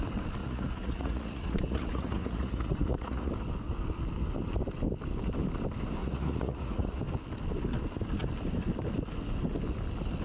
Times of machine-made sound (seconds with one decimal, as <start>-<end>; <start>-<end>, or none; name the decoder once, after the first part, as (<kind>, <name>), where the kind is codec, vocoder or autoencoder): 0.4-3.3 (vocoder, Vocos); 6.0-7.0